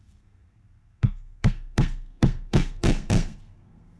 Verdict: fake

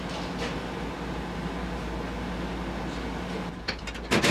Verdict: real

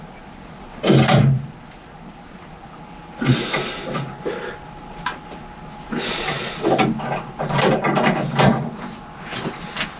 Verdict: real